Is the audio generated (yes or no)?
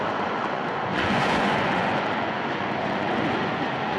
yes